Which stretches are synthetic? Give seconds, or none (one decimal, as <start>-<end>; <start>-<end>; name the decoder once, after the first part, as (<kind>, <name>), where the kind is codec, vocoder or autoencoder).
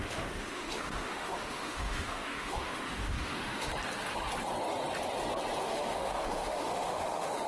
0.0-3.7 (autoencoder, DAC-VAE); 5.6-7.5